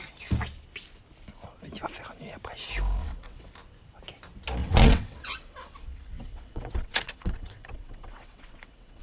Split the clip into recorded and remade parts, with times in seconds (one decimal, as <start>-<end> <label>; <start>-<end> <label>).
0.0-3.0 recorded; 3.0-3.5 remade; 3.5-4.6 recorded; 4.6-9.0 remade